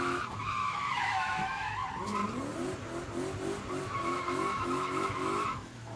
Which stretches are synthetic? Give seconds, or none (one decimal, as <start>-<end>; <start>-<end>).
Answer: 0.0-1.8; 3.8-6.0